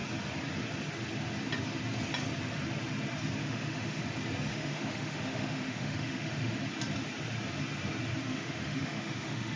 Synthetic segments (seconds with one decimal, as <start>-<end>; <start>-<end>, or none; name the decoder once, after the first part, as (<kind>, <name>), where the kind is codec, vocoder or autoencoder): 3.4-4.0 (autoencoder, DAC-VAE); 4.5-6.6; 8.2-9.6